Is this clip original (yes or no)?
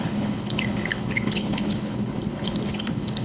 no